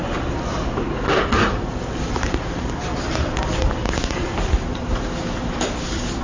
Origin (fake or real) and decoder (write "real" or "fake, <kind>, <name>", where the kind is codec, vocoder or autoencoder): real